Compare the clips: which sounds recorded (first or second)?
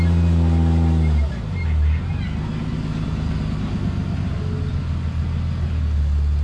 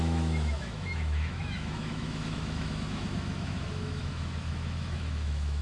first